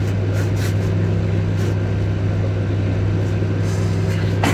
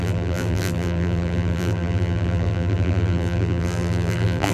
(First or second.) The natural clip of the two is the first